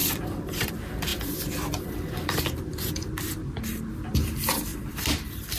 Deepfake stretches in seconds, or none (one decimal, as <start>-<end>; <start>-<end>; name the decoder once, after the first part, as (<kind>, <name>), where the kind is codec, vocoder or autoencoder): 0.0-5.6 (vocoder, BigVGAN v2)